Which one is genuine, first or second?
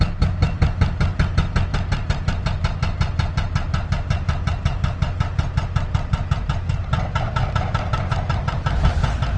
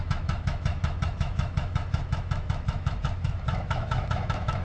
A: first